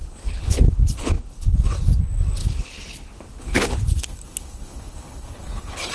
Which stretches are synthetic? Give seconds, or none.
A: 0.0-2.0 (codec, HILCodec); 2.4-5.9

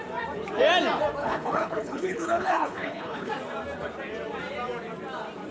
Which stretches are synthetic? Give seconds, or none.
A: 1.2-3.3 (codec, HILCodec)

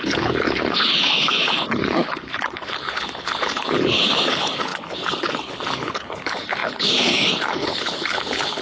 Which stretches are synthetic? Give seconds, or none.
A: 0.0-8.6 (codec, HILCodec)

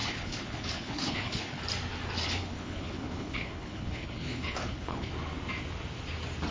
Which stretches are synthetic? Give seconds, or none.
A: 0.0-1.6 (codec, HILCodec); 2.2-5.1

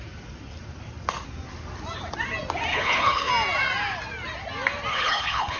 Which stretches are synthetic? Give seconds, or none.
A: 2.7-3.3 (codec, HILCodec); 4.9-5.6